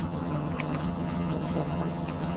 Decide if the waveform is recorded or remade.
remade